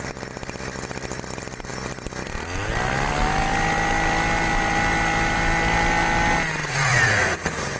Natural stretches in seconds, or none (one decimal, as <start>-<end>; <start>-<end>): 0.0-6.6